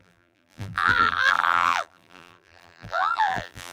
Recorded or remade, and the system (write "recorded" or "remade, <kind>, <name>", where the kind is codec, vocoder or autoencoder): remade, vocoder, BigVGAN v2